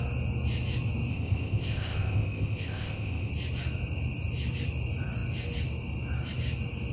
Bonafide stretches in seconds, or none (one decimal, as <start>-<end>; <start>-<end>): 0.0-1.1; 3.3-6.9